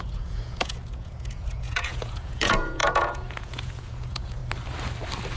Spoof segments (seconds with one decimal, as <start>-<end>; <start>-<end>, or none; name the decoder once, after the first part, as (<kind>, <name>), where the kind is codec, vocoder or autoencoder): 0.0-4.4 (vocoder, Vocos)